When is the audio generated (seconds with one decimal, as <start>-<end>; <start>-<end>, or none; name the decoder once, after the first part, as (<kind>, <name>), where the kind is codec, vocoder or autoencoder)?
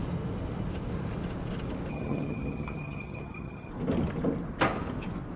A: 1.9-3.7 (vocoder, HiFi-GAN)